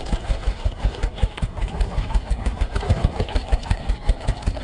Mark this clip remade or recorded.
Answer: remade